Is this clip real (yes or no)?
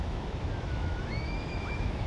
no